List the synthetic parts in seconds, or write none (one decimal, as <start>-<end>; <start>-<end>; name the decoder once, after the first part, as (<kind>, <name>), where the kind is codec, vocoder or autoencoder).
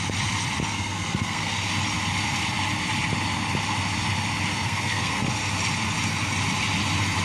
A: 0.7-1.7 (codec, SNAC); 4.5-5.3